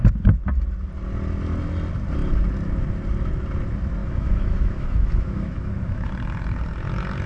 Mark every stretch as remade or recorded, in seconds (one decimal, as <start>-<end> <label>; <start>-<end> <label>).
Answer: 0.0-4.0 recorded; 4.0-6.1 remade; 6.1-7.3 recorded